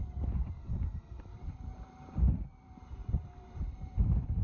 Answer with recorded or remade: remade